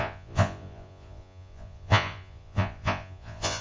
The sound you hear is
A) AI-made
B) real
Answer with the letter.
A